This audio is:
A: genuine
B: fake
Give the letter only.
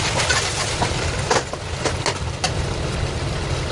A